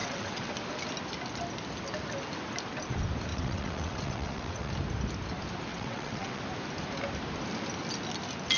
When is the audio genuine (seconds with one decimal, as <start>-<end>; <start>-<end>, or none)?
0.5-3.3; 4.7-5.7; 6.4-8.6